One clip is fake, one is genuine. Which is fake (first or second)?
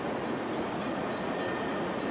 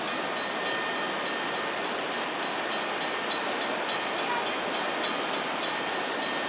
first